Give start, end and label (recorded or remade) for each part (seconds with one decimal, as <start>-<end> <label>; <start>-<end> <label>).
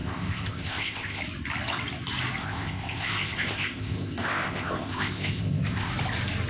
0.0-1.2 remade; 1.2-2.4 recorded; 2.4-5.9 remade; 5.9-6.5 recorded